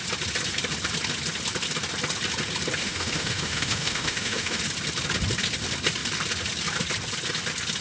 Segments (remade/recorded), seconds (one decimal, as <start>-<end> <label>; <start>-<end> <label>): 0.0-2.8 recorded; 2.8-4.6 remade; 4.6-7.8 recorded